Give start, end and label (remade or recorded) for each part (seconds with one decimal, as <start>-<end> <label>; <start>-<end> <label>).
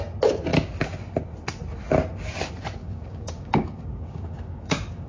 0.0-2.8 recorded; 2.8-5.1 remade